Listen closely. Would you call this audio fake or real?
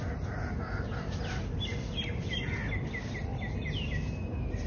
real